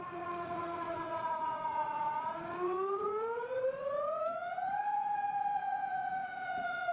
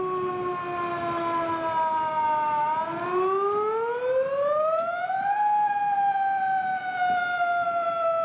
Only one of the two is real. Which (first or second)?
second